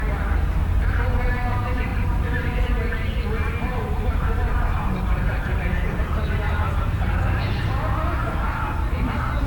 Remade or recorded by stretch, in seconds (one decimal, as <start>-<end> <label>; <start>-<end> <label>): 0.0-9.5 recorded